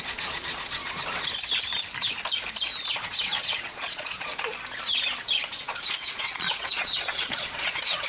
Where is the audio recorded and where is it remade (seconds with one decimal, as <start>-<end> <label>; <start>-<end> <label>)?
0.0-0.8 remade; 0.8-2.9 recorded; 2.9-4.3 remade; 4.3-5.5 recorded; 5.5-8.1 remade